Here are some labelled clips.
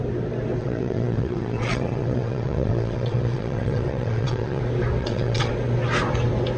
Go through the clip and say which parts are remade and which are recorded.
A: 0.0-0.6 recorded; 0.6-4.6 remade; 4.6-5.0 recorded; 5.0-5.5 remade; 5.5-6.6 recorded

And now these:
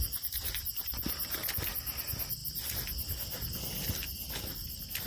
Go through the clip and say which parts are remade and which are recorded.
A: 0.0-5.1 recorded

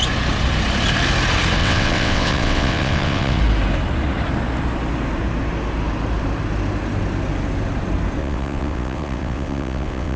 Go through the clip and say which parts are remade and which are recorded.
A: 0.0-1.6 recorded; 1.6-3.4 remade; 3.4-8.2 recorded; 8.2-10.2 remade

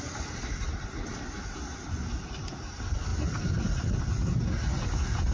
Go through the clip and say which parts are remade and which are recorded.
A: 0.0-5.3 recorded

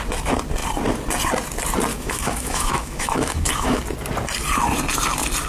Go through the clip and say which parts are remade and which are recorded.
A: 0.0-1.9 recorded; 1.9-3.8 remade; 3.8-5.5 recorded

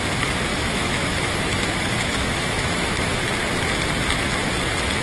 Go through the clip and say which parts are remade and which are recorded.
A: 0.0-0.5 recorded; 0.5-3.2 remade; 3.2-5.0 recorded

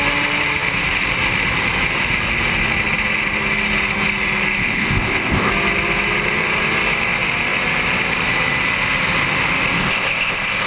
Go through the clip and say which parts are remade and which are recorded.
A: 0.0-4.6 recorded; 4.6-5.5 remade; 5.5-9.8 recorded; 9.8-10.7 remade

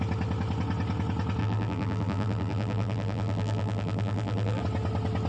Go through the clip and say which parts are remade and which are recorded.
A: 0.0-1.4 recorded; 1.4-4.6 remade; 4.6-5.3 recorded